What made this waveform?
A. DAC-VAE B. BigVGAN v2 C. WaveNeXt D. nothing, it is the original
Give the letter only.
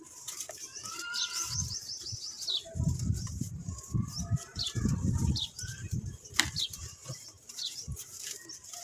B